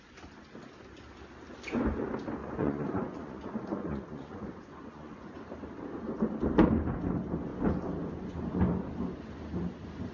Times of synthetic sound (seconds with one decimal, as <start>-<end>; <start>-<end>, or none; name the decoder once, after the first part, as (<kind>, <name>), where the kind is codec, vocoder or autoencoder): 2.4-5.3 (vocoder, Vocos)